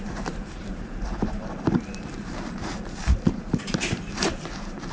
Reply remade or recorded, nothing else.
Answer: remade